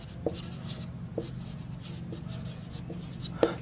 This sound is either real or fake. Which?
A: real